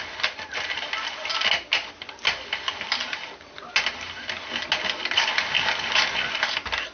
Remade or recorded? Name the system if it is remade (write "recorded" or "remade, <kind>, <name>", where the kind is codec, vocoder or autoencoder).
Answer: recorded